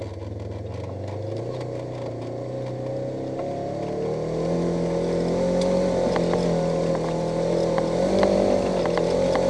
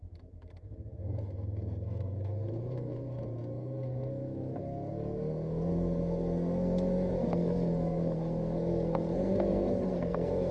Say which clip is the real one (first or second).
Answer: first